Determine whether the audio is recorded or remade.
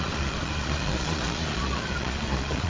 remade